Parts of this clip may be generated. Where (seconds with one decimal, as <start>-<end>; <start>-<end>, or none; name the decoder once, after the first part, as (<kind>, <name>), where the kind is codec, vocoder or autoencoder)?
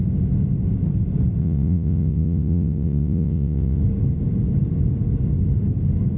1.4-3.8 (vocoder, Vocos)